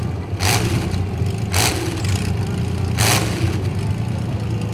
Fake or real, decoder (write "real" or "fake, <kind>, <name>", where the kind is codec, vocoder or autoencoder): real